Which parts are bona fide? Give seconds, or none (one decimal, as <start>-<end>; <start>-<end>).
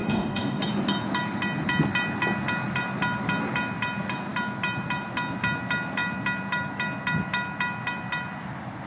0.6-8.9